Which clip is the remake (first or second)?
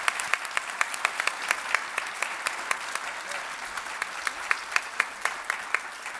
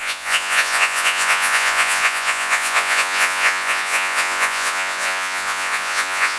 second